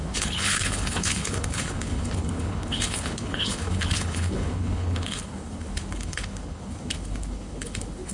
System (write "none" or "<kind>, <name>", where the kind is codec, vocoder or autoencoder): codec, HILCodec